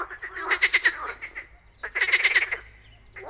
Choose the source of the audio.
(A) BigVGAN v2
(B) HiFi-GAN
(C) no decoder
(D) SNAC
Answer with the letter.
C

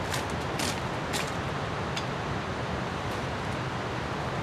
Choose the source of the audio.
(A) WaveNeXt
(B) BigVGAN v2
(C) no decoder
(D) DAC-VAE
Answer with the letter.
C